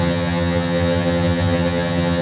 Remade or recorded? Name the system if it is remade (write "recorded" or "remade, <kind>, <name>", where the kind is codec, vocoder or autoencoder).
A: remade, vocoder, HiFi-GAN